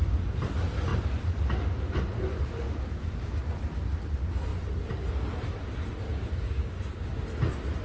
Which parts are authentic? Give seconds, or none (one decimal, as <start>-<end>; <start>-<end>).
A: 0.0-6.1; 7.1-7.8